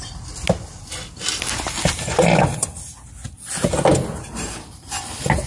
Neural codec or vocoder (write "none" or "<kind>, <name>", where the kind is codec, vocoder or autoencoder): none